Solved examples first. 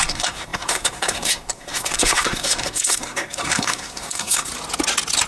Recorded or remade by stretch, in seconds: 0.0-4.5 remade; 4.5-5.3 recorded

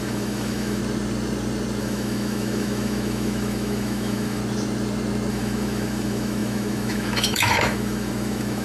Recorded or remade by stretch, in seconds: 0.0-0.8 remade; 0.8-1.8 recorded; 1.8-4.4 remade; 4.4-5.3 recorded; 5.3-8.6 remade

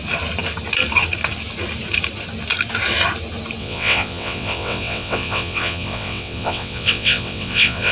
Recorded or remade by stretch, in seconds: 0.0-3.6 recorded; 3.6-7.9 remade

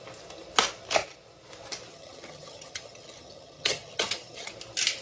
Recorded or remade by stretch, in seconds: 0.0-1.9 recorded; 1.9-4.5 remade; 4.5-5.0 recorded

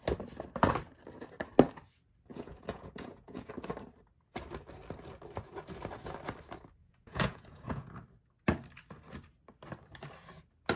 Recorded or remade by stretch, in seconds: 0.0-2.3 recorded; 2.3-3.5 remade; 3.5-6.8 recorded; 6.8-8.0 remade; 8.0-10.8 recorded

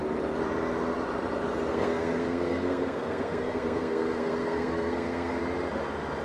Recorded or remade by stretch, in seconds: 0.0-1.7 recorded; 1.7-5.4 remade; 5.4-6.2 recorded

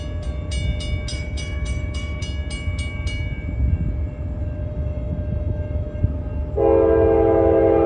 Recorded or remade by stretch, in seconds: 0.0-1.1 recorded; 1.1-2.2 remade; 2.2-4.6 recorded; 4.6-6.0 remade; 6.0-7.9 recorded

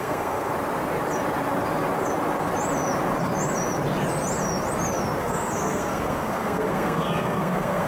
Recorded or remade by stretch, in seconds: 0.0-0.5 remade; 0.5-5.2 recorded; 5.2-7.9 remade